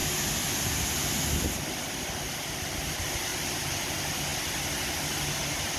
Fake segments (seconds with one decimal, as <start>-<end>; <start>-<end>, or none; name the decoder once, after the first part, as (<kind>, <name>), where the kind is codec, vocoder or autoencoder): none